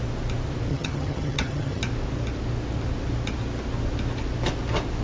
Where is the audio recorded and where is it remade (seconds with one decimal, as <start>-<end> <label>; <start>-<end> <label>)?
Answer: 0.0-0.7 recorded; 0.7-1.8 remade; 1.8-5.0 recorded